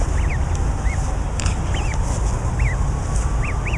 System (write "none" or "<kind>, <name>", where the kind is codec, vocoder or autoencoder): none